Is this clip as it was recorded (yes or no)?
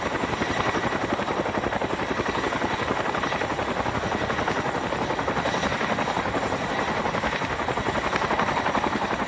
yes